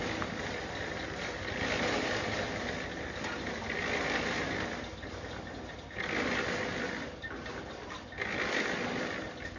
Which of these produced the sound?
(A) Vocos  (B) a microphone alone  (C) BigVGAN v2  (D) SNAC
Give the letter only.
B